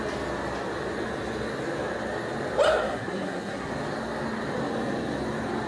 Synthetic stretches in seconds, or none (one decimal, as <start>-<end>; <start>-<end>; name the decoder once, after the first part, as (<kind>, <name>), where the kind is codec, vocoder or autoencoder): 2.7-3.7 (codec, SNAC)